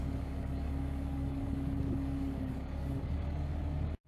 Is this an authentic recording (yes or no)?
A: no